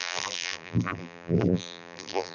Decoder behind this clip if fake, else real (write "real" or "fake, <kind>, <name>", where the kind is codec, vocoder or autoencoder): fake, vocoder, BigVGAN v2